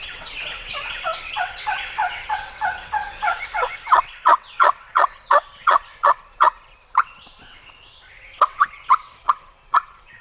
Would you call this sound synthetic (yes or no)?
yes